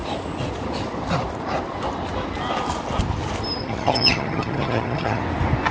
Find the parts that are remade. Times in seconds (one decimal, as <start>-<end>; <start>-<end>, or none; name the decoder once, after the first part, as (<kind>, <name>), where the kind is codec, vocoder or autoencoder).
3.6-5.2 (vocoder, HiFi-GAN)